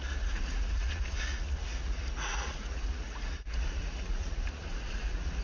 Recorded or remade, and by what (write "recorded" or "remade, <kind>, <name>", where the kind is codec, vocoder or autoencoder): remade, vocoder, Vocos